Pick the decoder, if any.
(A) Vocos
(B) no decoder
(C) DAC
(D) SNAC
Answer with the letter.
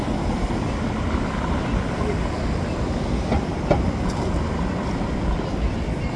B